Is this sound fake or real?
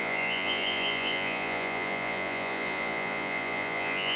fake